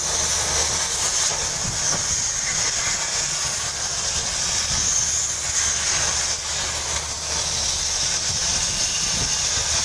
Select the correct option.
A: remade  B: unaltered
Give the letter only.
B